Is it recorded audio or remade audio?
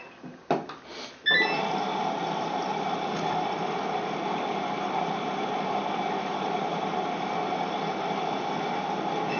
recorded